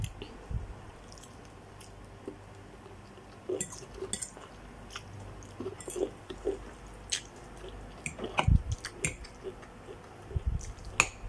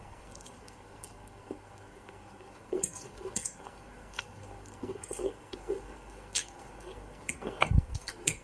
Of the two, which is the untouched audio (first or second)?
first